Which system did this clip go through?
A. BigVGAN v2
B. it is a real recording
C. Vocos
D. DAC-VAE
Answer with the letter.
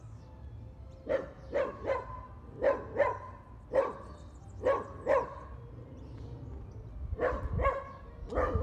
B